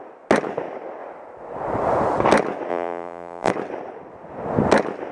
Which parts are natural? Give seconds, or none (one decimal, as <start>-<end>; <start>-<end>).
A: 0.0-2.7; 3.5-5.1